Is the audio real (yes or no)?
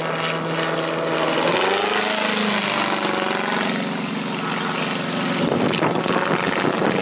yes